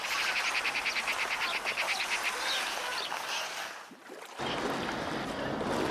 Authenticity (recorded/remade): recorded